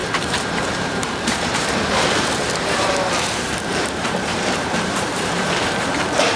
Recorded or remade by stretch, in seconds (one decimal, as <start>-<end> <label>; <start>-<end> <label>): 0.0-6.4 remade